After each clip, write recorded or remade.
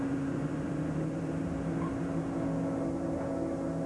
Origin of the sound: recorded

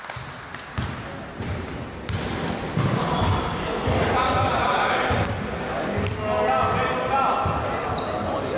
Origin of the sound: recorded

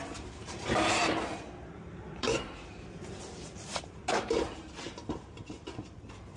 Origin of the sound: remade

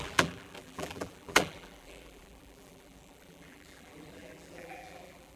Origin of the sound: remade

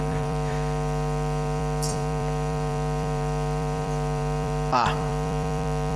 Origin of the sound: remade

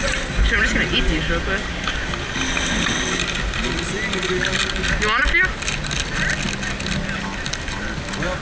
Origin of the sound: recorded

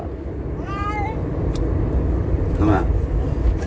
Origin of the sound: remade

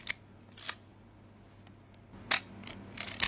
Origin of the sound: recorded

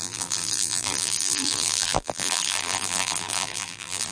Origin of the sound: remade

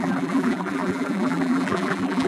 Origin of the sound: remade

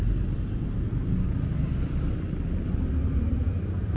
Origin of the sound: recorded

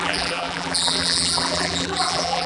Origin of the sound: remade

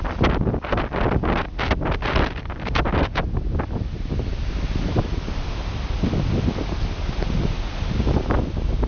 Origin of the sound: recorded